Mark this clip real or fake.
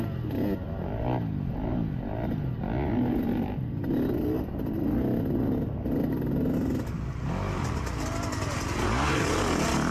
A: real